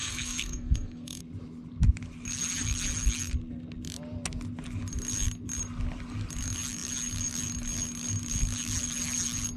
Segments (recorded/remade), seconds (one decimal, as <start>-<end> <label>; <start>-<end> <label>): 0.0-1.2 remade; 1.2-9.6 recorded